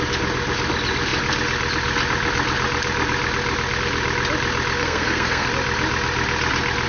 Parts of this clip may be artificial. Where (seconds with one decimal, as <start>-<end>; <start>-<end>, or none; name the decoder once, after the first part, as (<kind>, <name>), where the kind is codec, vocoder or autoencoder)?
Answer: 4.8-5.5 (codec, SNAC)